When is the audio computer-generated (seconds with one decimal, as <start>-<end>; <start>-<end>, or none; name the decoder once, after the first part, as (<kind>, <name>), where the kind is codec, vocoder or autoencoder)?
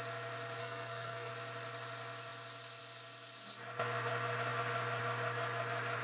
0.6-1.3 (codec, SNAC)